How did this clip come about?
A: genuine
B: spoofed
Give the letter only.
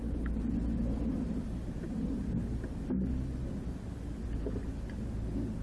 A